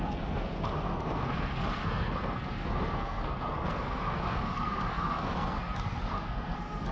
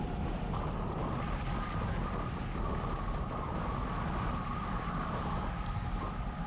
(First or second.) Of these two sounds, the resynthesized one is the first